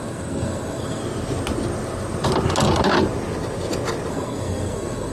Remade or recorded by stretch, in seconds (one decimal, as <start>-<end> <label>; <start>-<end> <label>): 0.0-1.0 remade; 1.0-4.1 recorded; 4.1-5.1 remade